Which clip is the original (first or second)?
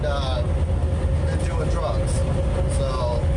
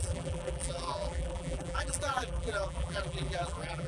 first